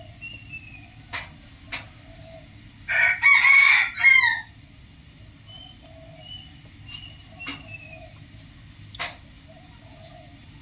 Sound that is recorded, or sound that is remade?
recorded